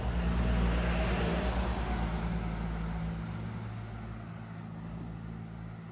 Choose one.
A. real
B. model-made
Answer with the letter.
A